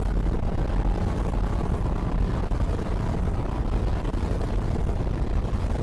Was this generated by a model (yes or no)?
no